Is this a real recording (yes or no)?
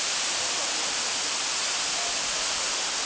yes